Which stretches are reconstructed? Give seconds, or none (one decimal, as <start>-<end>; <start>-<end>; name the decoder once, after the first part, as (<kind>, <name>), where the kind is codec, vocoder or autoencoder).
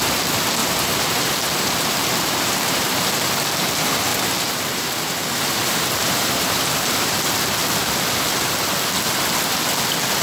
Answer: 0.6-3.3 (vocoder, BigVGAN v2); 4.1-7.1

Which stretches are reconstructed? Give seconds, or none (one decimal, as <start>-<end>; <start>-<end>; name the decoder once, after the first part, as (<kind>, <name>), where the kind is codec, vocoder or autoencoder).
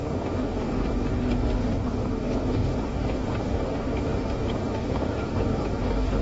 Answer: 0.0-6.2 (codec, DAC)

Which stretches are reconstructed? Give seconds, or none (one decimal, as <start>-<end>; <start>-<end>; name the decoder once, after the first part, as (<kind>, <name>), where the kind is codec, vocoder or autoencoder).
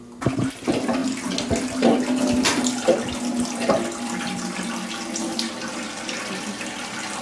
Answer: none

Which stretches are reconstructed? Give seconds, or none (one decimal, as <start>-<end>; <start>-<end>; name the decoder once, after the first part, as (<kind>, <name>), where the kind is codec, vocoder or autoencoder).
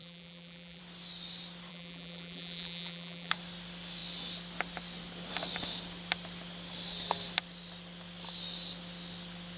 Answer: 0.0-0.8 (vocoder, BigVGAN v2); 1.7-3.3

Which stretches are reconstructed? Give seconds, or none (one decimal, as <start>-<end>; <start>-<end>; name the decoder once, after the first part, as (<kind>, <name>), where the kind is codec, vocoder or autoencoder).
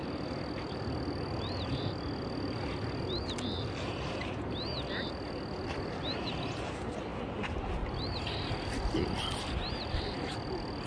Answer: none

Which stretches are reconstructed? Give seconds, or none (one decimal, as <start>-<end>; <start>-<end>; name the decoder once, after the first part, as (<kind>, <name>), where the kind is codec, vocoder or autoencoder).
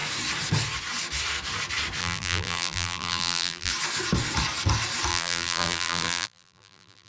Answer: 2.0-3.7 (vocoder, BigVGAN v2); 5.1-7.1